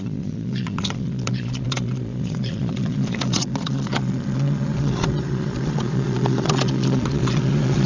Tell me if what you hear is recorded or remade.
remade